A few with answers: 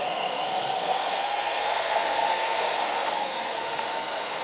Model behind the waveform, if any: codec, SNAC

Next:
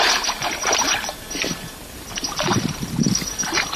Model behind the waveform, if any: vocoder, BigVGAN v2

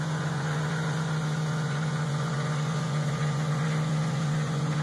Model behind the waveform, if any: vocoder, Vocos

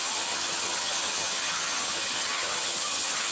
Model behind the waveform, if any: vocoder, HiFi-GAN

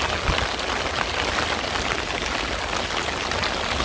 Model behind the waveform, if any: none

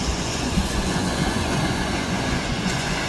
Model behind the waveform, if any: vocoder, Vocos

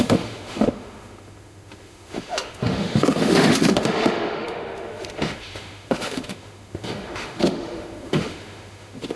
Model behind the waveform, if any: autoencoder, DAC-VAE